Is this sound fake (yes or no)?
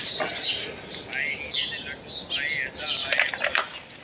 no